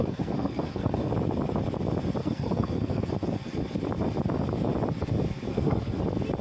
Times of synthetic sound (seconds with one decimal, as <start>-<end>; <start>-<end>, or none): 0.0-1.1; 2.2-3.1; 5.5-6.0